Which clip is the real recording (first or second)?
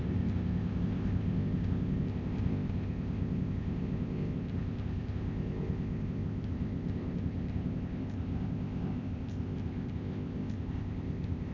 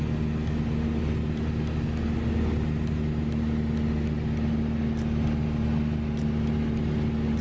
second